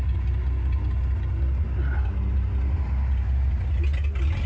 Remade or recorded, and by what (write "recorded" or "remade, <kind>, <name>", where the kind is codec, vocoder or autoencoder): recorded